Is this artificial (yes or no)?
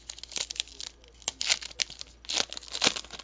no